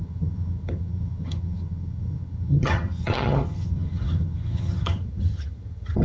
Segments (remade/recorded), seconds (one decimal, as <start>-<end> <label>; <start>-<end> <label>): 0.0-6.0 remade